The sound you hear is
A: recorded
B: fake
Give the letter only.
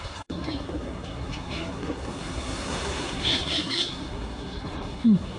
B